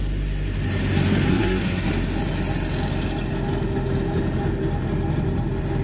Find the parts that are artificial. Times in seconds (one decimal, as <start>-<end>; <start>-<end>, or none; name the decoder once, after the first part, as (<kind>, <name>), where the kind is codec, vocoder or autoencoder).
1.3-1.9 (codec, SNAC)